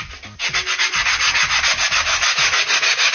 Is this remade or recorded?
recorded